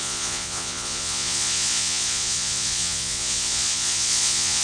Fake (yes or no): yes